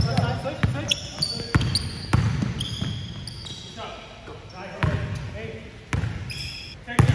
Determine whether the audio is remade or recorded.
recorded